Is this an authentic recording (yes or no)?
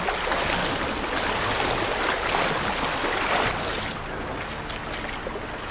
yes